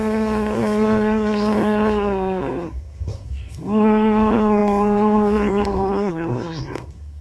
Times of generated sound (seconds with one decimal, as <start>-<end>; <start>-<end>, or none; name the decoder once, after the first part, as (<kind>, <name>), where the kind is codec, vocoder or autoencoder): 0.0-7.2 (codec, SNAC)